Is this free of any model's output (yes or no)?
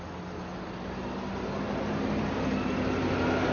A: yes